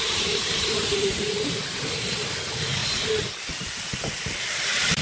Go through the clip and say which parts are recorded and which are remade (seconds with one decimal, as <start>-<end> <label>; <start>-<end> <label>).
0.0-2.8 remade; 2.8-4.4 recorded; 4.4-5.0 remade